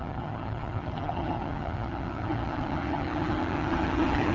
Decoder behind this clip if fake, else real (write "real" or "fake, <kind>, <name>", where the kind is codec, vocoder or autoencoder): fake, vocoder, HiFi-GAN